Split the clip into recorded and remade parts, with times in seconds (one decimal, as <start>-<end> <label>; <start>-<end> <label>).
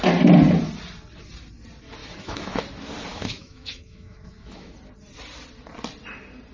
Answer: 0.0-2.0 recorded; 2.0-2.6 remade; 2.6-3.1 recorded; 3.1-4.7 remade; 4.7-6.5 recorded